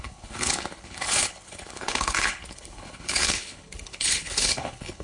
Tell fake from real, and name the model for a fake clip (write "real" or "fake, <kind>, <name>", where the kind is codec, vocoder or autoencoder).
fake, codec, HILCodec